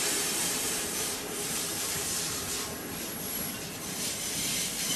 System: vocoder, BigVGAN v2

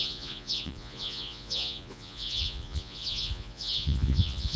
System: vocoder, Vocos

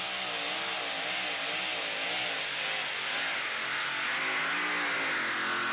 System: none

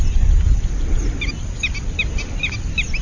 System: none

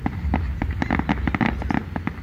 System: none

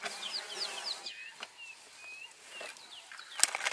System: none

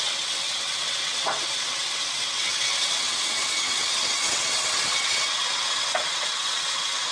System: vocoder, WaveNeXt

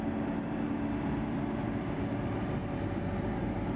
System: vocoder, BigVGAN v2